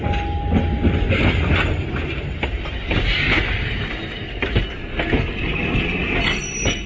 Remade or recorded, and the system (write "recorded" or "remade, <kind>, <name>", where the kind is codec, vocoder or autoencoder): recorded